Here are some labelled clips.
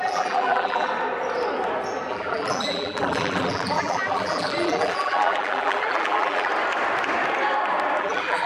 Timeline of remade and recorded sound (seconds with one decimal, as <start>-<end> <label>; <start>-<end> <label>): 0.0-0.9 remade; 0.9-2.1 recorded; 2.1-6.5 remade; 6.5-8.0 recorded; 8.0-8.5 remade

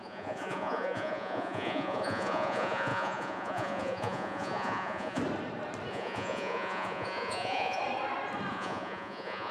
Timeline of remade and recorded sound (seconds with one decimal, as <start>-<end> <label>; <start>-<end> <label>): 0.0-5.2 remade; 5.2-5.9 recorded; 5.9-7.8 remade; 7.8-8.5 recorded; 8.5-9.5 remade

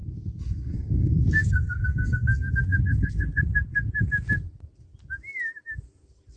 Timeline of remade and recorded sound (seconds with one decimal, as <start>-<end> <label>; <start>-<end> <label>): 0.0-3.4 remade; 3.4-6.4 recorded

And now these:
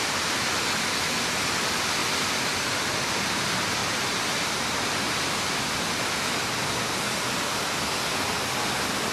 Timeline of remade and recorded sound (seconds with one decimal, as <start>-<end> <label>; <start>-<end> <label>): 0.0-2.0 recorded; 2.0-2.6 remade; 2.6-3.8 recorded; 3.8-5.4 remade; 5.4-9.1 recorded

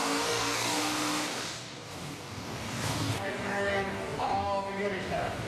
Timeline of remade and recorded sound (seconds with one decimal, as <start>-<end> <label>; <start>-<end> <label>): 0.0-5.5 remade

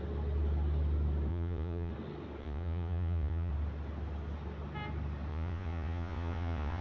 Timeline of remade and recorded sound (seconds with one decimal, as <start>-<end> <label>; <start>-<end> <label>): 0.0-1.3 recorded; 1.3-1.9 remade; 1.9-2.4 recorded; 2.4-3.5 remade; 3.5-5.3 recorded; 5.3-6.8 remade